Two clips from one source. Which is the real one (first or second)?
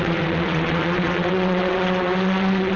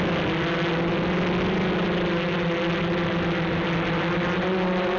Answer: second